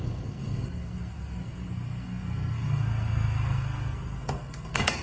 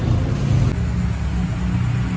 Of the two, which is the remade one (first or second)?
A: first